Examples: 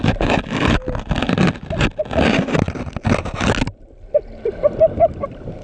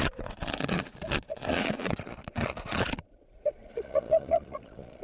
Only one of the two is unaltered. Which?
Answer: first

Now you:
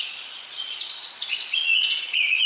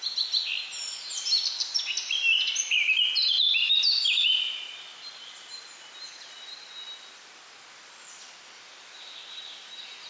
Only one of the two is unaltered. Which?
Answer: second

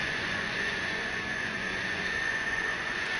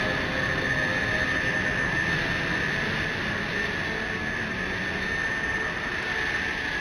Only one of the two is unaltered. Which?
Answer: second